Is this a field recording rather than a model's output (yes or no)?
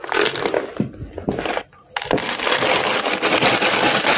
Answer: yes